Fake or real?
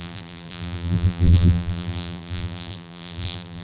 fake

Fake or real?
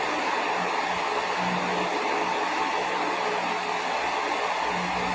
real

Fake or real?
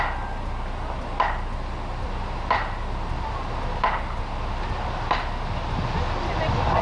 real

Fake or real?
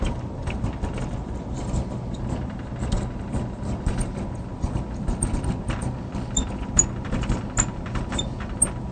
real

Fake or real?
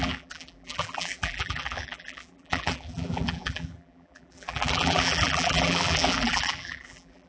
fake